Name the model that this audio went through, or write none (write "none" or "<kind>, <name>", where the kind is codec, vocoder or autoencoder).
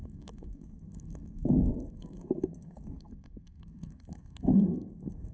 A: codec, SNAC